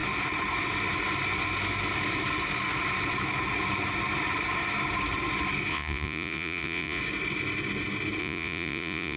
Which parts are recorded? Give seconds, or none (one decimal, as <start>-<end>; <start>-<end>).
0.0-5.7; 7.0-8.2